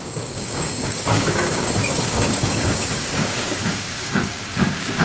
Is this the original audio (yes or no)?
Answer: no